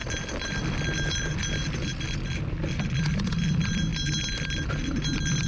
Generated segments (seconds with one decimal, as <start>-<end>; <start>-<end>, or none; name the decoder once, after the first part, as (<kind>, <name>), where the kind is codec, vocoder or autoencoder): none